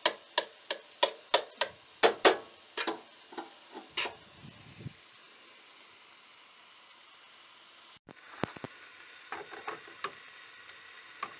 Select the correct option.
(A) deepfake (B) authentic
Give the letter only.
B